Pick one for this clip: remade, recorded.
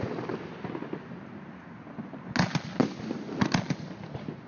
recorded